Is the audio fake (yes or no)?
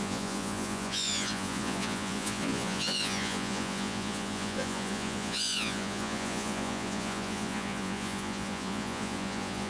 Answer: yes